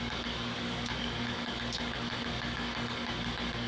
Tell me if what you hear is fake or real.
fake